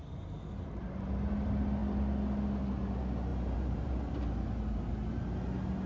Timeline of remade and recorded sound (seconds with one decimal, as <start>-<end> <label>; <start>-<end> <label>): 0.0-0.8 remade; 0.8-3.3 recorded; 3.3-4.4 remade; 4.4-5.9 recorded